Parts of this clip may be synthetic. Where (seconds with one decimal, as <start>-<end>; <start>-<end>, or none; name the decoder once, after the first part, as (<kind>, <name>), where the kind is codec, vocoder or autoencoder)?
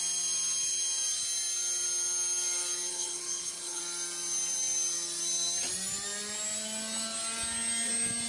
2.9-3.8 (codec, HILCodec)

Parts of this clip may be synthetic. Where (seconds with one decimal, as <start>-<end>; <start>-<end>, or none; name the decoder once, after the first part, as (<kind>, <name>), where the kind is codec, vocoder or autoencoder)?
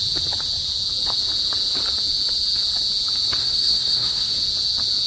3.4-4.3 (codec, SNAC)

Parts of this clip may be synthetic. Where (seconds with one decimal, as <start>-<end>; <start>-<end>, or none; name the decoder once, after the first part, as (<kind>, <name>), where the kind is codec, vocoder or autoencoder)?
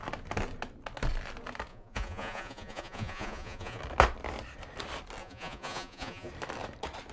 1.7-3.8 (vocoder, Vocos); 5.2-6.3